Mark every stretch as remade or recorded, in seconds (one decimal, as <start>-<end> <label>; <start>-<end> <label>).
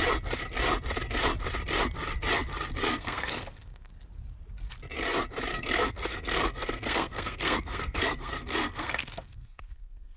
0.0-2.8 recorded; 2.8-3.9 remade; 3.9-5.5 recorded; 5.5-10.2 remade